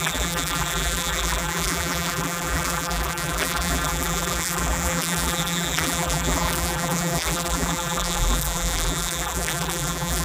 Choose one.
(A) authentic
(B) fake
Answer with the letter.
B